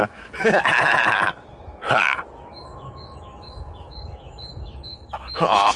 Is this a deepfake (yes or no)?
yes